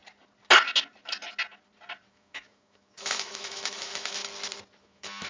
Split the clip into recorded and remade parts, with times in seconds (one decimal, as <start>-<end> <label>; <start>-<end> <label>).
0.0-2.1 recorded; 2.1-4.2 remade; 4.2-4.8 recorded; 4.8-5.3 remade